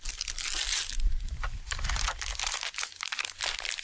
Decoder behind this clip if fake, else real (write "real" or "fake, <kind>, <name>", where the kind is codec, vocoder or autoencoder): real